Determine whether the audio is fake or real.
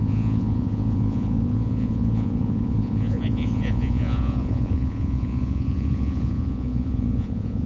fake